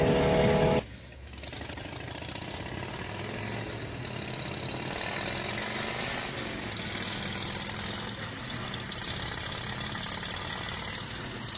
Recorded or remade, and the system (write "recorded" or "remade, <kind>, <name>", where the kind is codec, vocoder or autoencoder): recorded